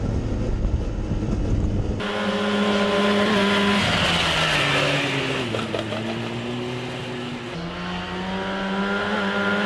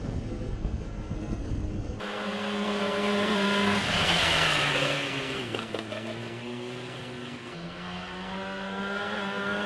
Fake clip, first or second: second